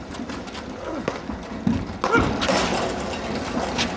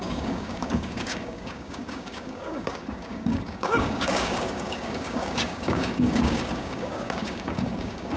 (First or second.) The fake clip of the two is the second